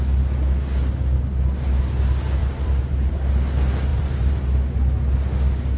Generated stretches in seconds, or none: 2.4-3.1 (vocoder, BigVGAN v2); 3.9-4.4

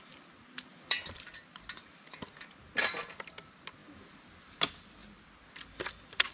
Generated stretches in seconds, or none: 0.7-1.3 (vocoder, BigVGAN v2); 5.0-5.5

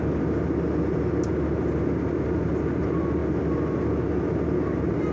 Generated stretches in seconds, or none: none